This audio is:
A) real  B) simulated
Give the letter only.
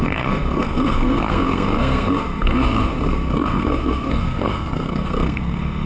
B